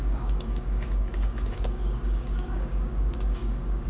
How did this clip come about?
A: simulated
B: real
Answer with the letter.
A